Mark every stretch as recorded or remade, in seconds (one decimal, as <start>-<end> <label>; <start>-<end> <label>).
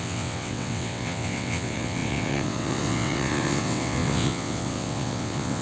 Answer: 0.0-5.6 remade